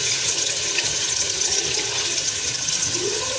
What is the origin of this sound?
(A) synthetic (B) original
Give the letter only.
A